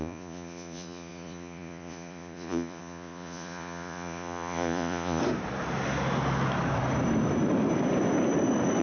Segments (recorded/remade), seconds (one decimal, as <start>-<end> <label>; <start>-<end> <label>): 0.0-5.2 remade; 5.2-8.8 recorded